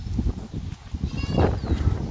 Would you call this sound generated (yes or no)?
no